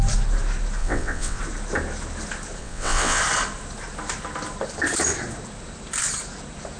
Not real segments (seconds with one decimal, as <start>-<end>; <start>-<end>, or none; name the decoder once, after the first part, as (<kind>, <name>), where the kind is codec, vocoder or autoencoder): 0.8-1.4 (vocoder, WaveNeXt); 2.6-3.2